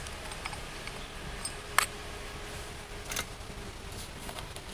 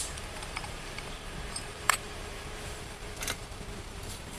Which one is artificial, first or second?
second